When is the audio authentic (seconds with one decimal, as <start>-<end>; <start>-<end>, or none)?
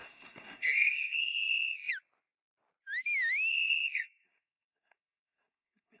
1.9-3.5